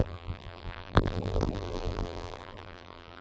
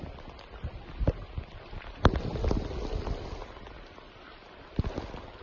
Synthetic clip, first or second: first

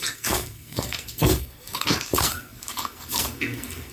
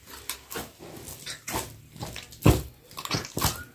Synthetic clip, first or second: first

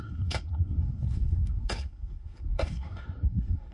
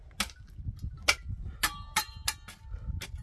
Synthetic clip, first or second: first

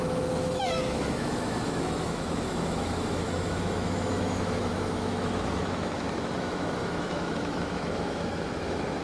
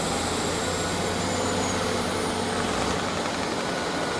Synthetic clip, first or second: first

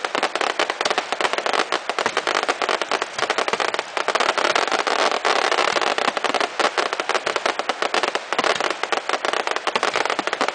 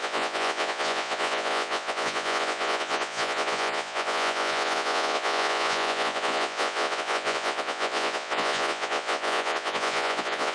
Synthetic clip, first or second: second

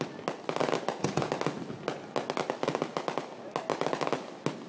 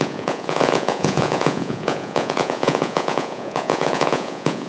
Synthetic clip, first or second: second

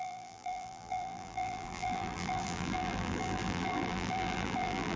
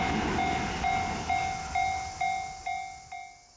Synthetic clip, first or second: first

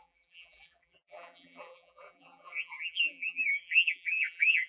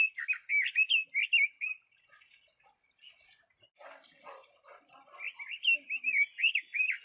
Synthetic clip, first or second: first